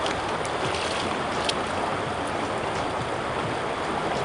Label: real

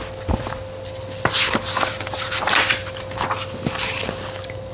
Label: real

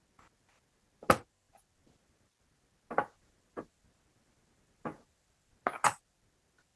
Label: real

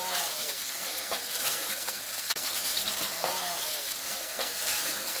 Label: fake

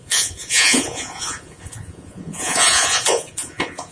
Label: fake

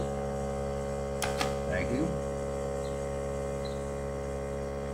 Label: real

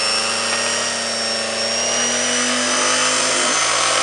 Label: real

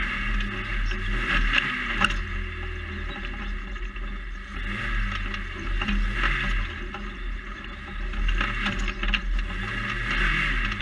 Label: real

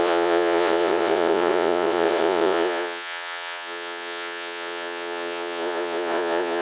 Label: fake